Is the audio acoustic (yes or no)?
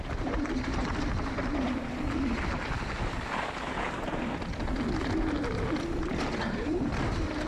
no